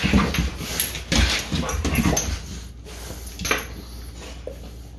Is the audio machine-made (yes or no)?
no